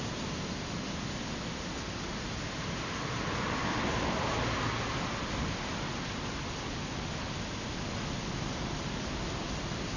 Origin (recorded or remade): recorded